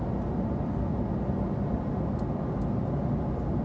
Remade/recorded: recorded